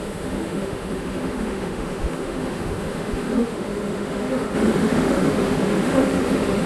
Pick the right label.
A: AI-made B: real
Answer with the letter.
A